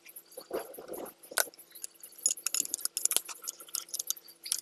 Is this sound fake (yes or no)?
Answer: no